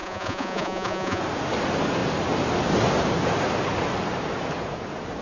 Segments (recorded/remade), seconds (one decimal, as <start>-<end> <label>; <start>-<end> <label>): 0.0-1.2 remade; 1.2-5.2 recorded